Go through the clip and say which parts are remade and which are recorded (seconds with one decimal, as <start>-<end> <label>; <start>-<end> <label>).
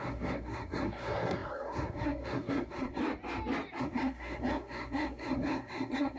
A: 0.0-3.0 remade; 3.0-3.8 recorded; 3.8-6.2 remade